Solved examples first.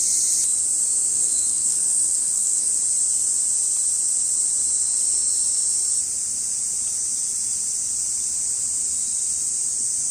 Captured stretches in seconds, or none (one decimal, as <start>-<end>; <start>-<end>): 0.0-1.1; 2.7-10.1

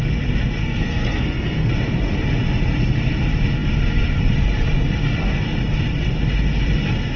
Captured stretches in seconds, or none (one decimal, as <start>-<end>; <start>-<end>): 0.0-0.6; 1.7-7.2

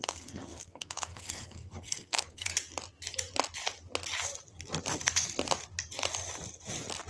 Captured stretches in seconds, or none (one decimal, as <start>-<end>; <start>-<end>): 2.5-7.1